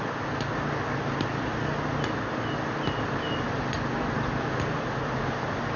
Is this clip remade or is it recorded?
recorded